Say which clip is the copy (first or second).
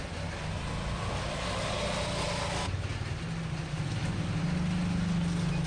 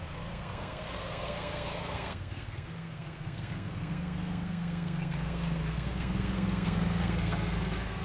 second